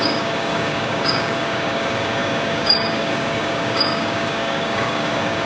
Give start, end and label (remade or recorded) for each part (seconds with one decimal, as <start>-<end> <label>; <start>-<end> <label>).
0.0-5.5 remade